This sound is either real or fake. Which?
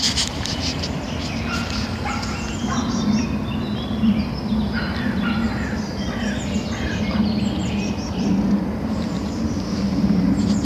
real